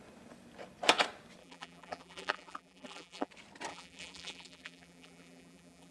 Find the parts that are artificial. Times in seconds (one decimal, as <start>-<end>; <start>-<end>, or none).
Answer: 1.4-3.3; 3.7-5.9